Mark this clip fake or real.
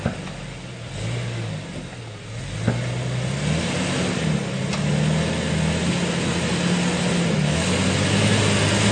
real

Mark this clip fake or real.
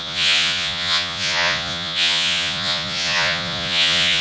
fake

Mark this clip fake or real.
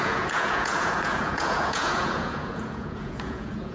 fake